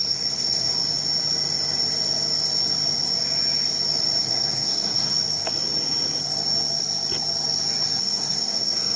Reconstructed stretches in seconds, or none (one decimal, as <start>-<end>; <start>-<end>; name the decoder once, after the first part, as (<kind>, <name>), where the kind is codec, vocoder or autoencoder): 0.0-0.7 (codec, SNAC); 4.2-5.1; 8.0-9.0